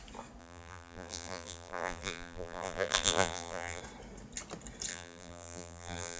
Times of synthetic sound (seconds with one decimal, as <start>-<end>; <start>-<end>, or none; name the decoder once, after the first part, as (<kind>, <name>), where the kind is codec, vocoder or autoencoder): 0.4-3.8 (vocoder, BigVGAN v2); 4.9-6.2